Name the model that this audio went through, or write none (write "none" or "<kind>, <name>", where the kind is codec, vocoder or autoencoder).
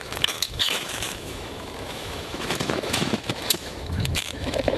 autoencoder, DAC-VAE